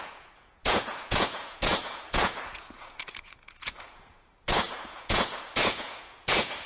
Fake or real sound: fake